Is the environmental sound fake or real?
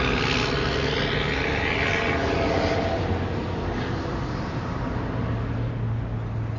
real